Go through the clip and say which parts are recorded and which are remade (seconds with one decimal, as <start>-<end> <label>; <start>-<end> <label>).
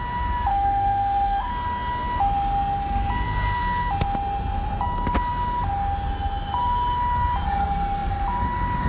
0.0-0.5 recorded; 0.5-1.5 remade; 1.5-8.9 recorded